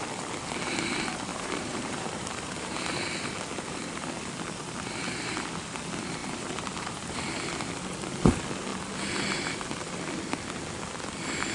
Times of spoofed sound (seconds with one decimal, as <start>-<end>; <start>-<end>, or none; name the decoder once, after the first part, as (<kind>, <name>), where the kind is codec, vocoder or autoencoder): 1.3-3.0 (vocoder, BigVGAN v2); 6.2-7.2